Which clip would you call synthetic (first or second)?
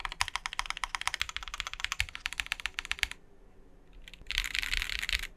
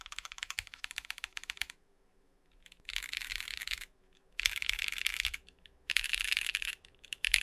second